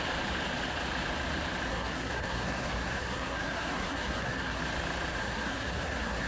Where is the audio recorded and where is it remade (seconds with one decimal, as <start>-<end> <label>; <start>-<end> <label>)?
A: 0.0-1.7 recorded; 1.7-4.6 remade; 4.6-5.2 recorded; 5.2-6.3 remade